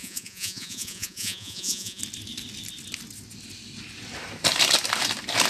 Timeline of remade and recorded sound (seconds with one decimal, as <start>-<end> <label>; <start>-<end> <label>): 0.0-2.0 remade; 2.0-5.5 recorded